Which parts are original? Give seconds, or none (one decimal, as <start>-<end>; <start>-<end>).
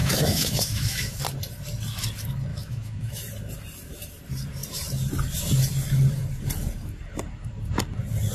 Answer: 1.2-2.5; 3.2-8.3